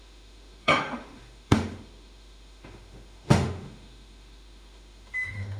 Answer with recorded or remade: remade